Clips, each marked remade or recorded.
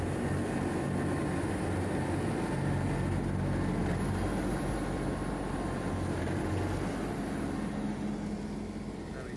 recorded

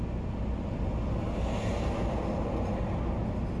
recorded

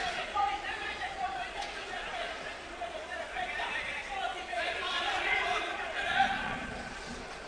remade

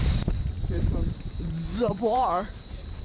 remade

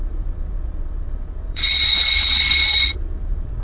remade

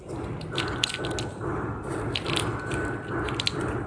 recorded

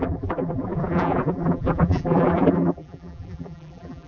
remade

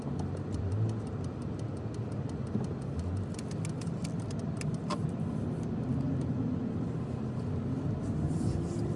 recorded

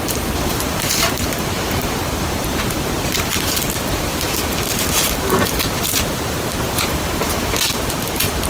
remade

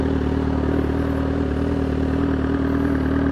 recorded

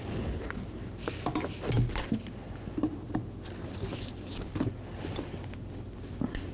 recorded